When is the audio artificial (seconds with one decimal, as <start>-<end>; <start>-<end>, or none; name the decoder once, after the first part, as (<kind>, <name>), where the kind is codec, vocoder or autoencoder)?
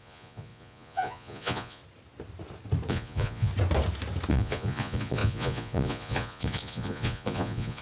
0.0-1.8 (vocoder, Vocos); 2.9-3.5; 4.3-7.8